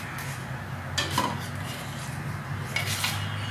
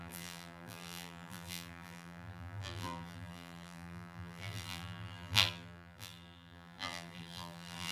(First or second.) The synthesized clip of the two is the second